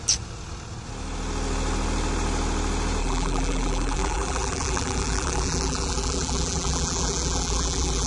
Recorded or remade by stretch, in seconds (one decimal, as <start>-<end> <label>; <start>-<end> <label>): 0.0-3.0 recorded; 3.0-8.1 remade